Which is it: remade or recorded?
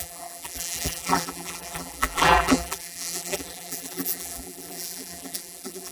remade